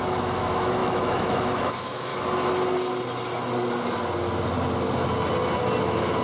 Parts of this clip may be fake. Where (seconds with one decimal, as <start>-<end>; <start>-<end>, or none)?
0.0-2.1; 5.8-6.2